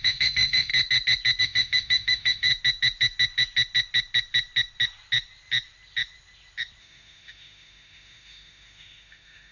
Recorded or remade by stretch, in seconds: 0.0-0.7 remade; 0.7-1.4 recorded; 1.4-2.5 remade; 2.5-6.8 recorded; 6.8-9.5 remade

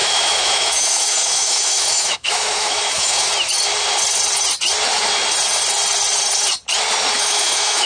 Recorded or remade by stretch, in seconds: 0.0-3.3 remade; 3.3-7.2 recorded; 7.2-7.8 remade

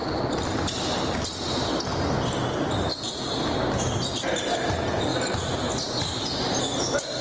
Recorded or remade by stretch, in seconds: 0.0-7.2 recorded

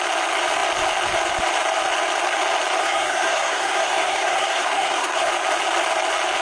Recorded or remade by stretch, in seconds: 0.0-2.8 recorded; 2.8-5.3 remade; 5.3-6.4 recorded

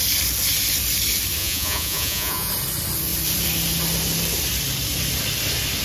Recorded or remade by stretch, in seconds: 0.0-1.4 recorded; 1.4-2.5 remade; 2.5-5.8 recorded

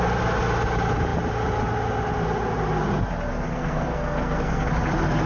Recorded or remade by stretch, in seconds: 0.0-3.3 recorded; 3.3-4.7 remade; 4.7-5.3 recorded